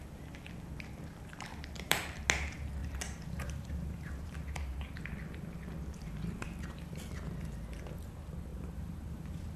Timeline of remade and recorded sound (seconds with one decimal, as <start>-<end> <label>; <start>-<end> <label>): 0.0-1.5 recorded; 1.5-2.2 remade; 2.2-2.8 recorded; 2.8-5.0 remade; 5.0-8.5 recorded; 8.5-9.6 remade